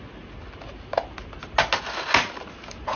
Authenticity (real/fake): real